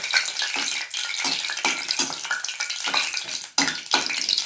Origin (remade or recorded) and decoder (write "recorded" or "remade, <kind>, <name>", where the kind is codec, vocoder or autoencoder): recorded